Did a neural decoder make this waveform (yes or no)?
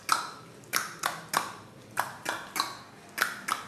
no